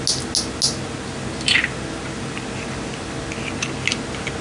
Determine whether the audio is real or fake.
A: real